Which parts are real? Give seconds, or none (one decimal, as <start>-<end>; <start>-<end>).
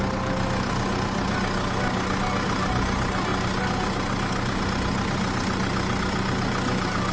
0.0-7.1